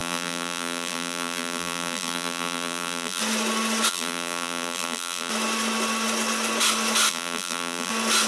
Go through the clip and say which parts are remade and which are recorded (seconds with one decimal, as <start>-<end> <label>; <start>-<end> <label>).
0.0-3.2 remade; 3.2-3.9 recorded; 3.9-5.3 remade; 5.3-7.1 recorded; 7.1-7.9 remade; 7.9-8.3 recorded